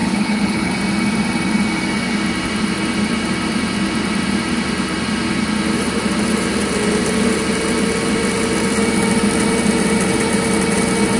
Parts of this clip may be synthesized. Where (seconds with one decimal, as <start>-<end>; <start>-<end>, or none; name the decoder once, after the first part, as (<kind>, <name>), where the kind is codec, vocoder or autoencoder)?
0.0-0.7 (codec, HILCodec)